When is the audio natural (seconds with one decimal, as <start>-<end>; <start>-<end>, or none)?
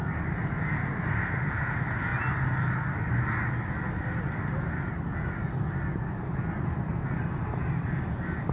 0.0-8.5